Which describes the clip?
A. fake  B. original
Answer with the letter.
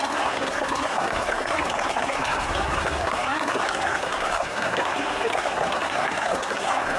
A